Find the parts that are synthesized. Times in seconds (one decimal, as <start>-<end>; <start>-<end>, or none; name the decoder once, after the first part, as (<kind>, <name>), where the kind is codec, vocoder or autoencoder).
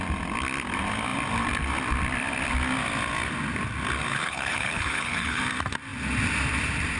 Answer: 4.1-5.4 (codec, HILCodec)